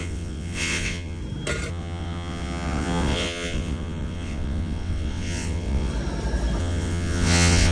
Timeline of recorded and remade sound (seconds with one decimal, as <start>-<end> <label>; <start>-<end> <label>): 0.0-1.2 remade; 1.2-1.7 recorded; 1.7-5.9 remade; 5.9-6.6 recorded; 6.6-7.7 remade